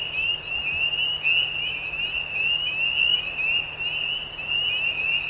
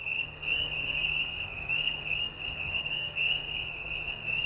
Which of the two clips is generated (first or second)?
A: second